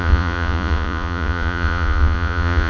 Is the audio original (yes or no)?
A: no